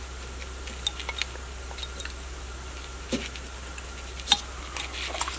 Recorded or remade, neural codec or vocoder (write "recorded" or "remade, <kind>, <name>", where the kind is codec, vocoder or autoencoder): recorded